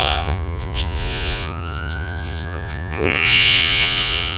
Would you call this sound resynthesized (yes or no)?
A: yes